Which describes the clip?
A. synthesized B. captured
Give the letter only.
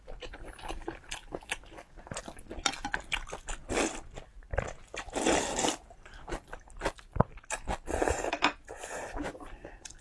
B